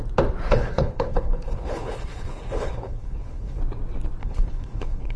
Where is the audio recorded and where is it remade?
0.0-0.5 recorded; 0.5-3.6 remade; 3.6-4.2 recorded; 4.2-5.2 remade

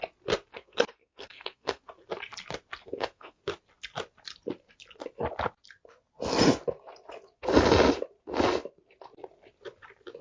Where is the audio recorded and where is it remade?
0.0-0.5 recorded; 0.5-1.8 remade; 1.8-2.8 recorded; 2.8-3.4 remade; 3.4-10.2 recorded

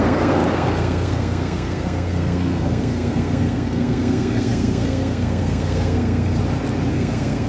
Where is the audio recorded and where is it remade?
0.0-6.4 remade; 6.4-6.9 recorded; 6.9-7.5 remade

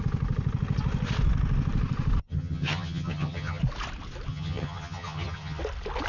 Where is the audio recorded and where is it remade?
0.0-2.2 recorded; 2.2-3.6 remade; 3.6-4.3 recorded; 4.3-5.6 remade; 5.6-6.1 recorded